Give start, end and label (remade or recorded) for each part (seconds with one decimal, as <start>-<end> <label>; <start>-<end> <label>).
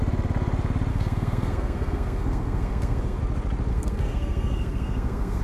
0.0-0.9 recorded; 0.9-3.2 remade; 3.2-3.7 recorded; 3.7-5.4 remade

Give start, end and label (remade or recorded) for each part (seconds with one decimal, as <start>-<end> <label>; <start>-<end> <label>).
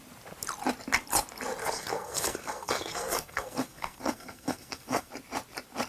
0.0-1.6 recorded; 1.6-5.1 remade; 5.1-5.9 recorded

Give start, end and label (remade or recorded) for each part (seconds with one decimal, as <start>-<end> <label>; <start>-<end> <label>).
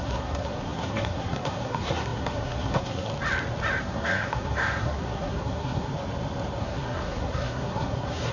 0.0-3.1 remade; 3.1-3.8 recorded; 3.8-5.9 remade; 5.9-6.6 recorded; 6.6-8.3 remade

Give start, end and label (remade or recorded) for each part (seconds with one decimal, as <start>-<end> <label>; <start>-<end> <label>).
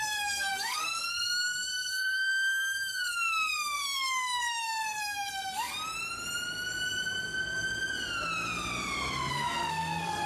0.0-5.7 remade; 5.7-9.3 recorded; 9.3-10.3 remade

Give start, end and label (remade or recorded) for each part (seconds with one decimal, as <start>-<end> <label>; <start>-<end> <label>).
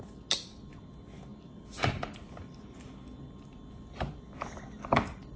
0.0-5.4 recorded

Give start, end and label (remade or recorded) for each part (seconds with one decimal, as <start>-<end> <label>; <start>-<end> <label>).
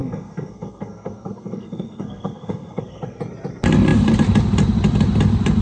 0.0-3.2 remade; 3.2-5.6 recorded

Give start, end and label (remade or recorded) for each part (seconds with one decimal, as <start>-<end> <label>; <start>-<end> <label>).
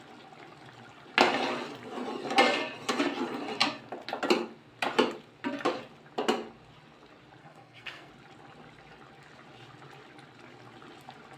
0.0-7.4 recorded; 7.4-8.1 remade; 8.1-11.4 recorded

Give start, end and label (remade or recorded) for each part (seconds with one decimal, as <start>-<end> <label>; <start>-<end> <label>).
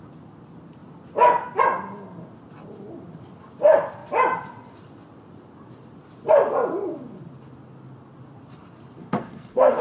0.0-9.0 recorded; 9.0-9.8 remade